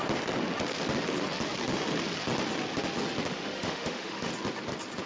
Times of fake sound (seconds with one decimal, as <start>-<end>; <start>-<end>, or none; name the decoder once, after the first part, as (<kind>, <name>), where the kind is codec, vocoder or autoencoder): 3.3-4.3 (autoencoder, DAC-VAE)